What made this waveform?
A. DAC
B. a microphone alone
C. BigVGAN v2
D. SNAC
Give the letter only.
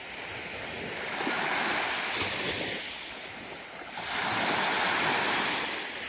B